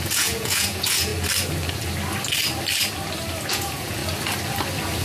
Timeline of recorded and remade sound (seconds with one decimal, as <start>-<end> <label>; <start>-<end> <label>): 0.0-1.1 remade; 1.1-3.5 recorded; 3.5-4.0 remade; 4.0-5.0 recorded

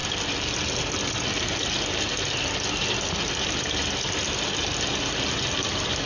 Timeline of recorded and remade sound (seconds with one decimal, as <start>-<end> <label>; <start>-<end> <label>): 0.0-6.1 recorded

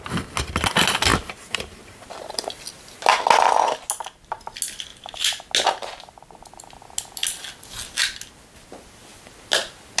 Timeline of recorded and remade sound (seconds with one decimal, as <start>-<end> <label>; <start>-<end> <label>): 0.0-1.1 recorded; 1.1-2.5 remade; 2.5-4.9 recorded; 4.9-5.5 remade; 5.5-10.0 recorded

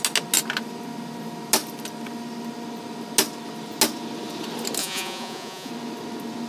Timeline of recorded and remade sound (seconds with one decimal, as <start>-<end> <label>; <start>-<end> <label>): 0.0-4.8 recorded; 4.8-5.7 remade; 5.7-6.5 recorded

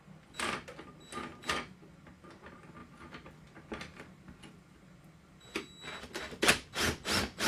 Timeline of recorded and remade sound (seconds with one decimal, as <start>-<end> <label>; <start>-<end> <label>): 0.0-7.5 recorded